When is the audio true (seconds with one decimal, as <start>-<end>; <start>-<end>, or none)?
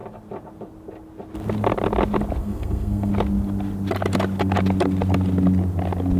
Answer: 0.0-2.4; 3.1-6.2